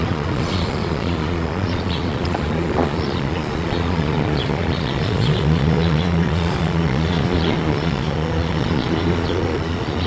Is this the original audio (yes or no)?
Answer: no